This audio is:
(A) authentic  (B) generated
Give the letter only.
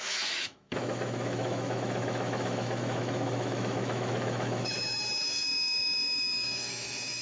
B